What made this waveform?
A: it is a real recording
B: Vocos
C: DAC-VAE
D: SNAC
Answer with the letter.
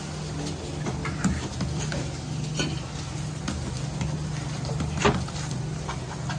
A